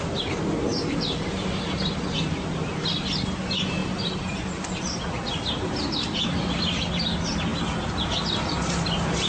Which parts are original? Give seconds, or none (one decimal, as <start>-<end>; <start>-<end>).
0.0-9.3